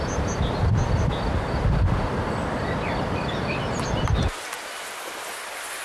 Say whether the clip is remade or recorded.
recorded